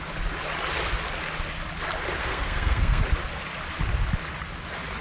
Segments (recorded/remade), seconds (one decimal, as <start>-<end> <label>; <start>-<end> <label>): 0.0-2.2 recorded; 2.2-3.0 remade; 3.0-5.0 recorded